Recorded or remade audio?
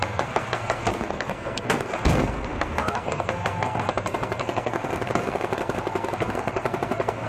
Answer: remade